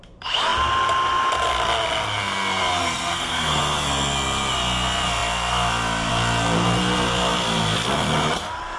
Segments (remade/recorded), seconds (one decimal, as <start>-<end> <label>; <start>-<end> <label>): 0.0-2.8 recorded; 2.8-3.6 remade; 3.6-8.8 recorded